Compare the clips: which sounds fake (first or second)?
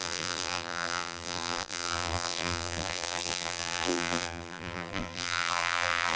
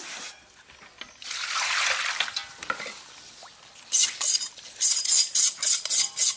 first